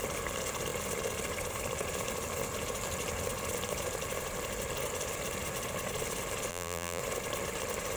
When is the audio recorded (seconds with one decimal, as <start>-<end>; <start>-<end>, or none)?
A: 0.0-6.5; 7.0-8.0

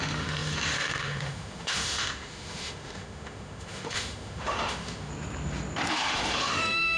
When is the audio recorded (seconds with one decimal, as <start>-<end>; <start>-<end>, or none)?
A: 5.1-5.9

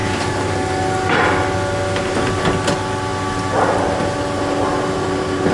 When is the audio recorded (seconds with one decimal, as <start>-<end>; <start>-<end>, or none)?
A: 0.0-5.5

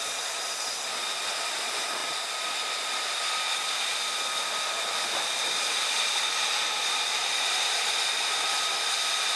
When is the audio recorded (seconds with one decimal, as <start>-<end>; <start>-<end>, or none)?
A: 0.0-9.4

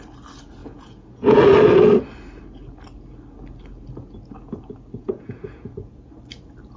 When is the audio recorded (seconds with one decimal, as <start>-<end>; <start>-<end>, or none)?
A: 0.0-0.6; 1.4-5.0; 6.1-6.8